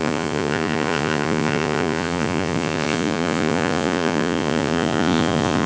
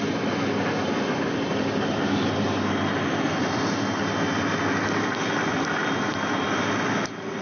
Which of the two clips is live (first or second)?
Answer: second